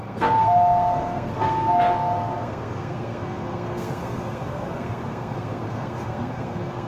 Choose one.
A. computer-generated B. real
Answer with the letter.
A